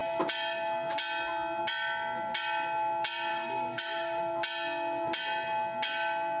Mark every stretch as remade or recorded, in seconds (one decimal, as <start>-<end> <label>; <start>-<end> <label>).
0.0-3.3 recorded; 3.3-4.2 remade; 4.2-6.4 recorded